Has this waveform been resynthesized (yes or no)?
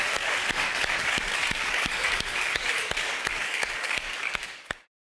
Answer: yes